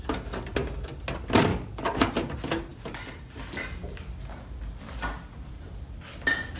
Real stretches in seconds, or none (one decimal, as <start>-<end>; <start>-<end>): 0.0-1.5; 2.1-6.6